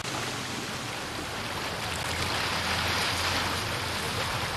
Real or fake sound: real